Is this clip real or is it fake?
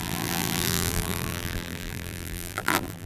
fake